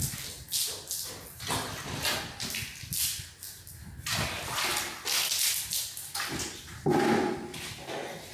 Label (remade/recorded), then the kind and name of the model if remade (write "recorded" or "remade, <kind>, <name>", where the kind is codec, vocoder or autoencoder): recorded